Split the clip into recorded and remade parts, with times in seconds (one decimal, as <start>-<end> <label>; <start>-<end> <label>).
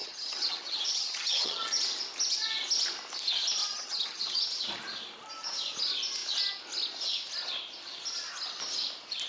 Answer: 0.0-1.8 remade; 1.8-3.6 recorded; 3.6-4.4 remade; 4.4-9.3 recorded